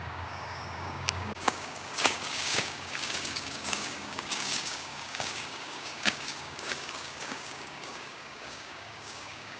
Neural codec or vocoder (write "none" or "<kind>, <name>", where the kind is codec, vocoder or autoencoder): codec, DAC